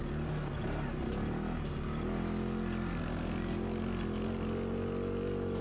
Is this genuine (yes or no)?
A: yes